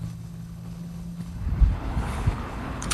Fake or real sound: fake